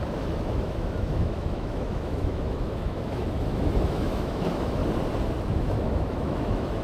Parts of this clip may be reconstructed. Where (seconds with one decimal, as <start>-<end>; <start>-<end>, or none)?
0.0-4.8; 5.5-6.8